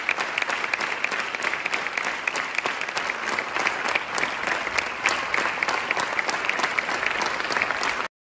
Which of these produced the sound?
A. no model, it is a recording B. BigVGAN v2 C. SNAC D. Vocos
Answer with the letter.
A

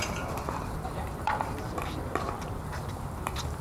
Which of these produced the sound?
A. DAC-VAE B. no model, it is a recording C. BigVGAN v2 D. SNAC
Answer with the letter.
C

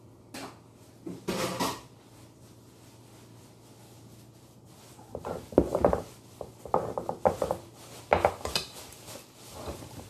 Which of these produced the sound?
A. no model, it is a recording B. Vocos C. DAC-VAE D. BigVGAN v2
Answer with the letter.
A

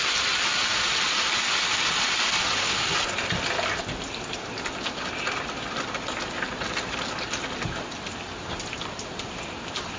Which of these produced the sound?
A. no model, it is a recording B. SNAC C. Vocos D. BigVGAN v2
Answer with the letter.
A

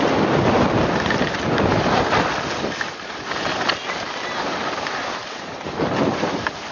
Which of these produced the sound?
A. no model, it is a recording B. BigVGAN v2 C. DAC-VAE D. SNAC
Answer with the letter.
B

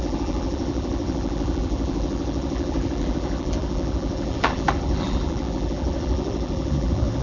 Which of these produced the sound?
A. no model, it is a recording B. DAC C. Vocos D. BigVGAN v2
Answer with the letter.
D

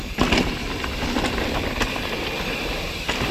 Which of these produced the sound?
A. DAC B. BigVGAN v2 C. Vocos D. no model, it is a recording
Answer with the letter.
D